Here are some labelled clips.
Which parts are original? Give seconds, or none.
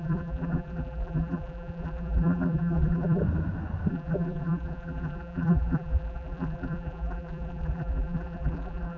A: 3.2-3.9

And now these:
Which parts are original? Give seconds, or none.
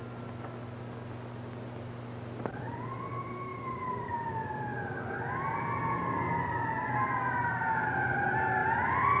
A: 0.0-3.5; 4.3-9.2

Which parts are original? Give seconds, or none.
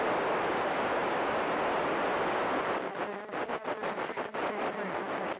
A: 0.0-5.4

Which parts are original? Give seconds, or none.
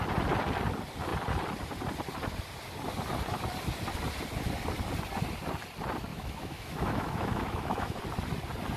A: 0.0-6.1; 8.0-8.8